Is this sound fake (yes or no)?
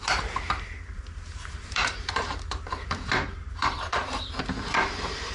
yes